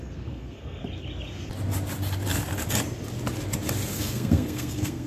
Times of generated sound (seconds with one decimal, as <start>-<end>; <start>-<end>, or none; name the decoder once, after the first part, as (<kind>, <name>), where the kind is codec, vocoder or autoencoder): 0.0-0.8 (codec, SNAC); 3.9-5.1